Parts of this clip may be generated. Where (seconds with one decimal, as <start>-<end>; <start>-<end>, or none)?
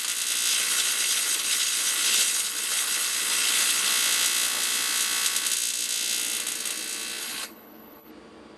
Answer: 0.5-3.9; 7.2-8.1